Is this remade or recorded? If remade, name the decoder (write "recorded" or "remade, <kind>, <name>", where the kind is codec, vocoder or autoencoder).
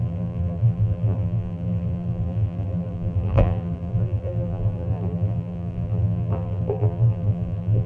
remade, vocoder, BigVGAN v2